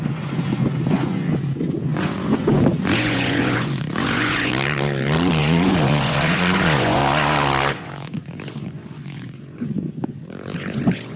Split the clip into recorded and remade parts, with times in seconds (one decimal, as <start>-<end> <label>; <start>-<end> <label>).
0.0-4.5 remade; 4.5-5.4 recorded; 5.4-7.0 remade; 7.0-7.7 recorded; 7.7-11.2 remade